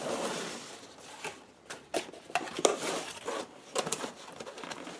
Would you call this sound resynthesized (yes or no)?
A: no